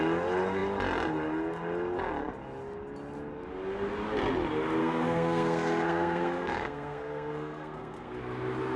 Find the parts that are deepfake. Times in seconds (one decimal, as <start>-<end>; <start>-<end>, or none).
4.8-8.2